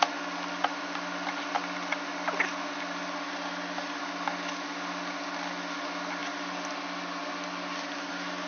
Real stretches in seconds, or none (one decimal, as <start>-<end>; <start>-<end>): 0.0-8.5